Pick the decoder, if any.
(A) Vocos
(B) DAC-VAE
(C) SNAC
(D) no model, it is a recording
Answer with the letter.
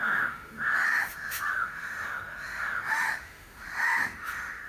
B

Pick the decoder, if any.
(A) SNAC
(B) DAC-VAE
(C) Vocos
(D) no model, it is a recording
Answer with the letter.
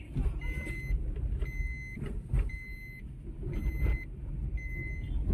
D